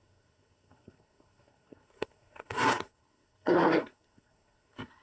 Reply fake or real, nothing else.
fake